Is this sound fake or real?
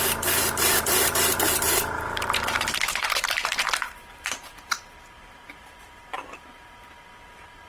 fake